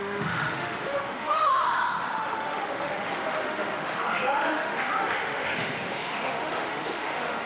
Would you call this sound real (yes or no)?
no